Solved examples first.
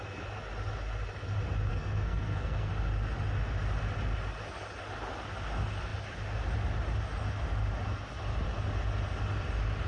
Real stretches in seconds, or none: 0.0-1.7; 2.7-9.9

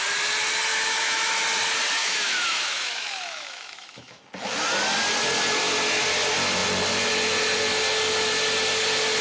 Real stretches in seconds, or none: 0.0-0.7; 1.3-2.0; 4.2-9.2

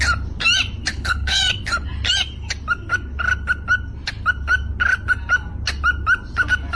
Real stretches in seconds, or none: 0.0-0.9; 1.4-6.8

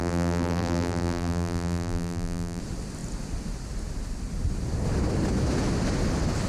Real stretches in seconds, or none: 2.6-6.5